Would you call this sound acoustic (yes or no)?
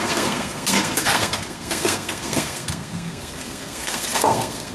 no